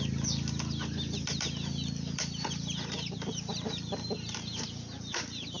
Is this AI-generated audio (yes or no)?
yes